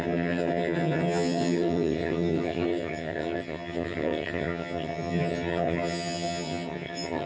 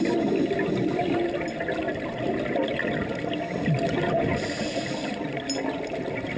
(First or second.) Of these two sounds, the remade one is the first